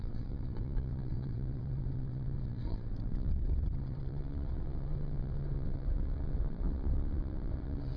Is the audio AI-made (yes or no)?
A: yes